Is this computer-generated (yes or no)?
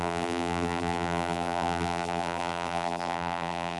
yes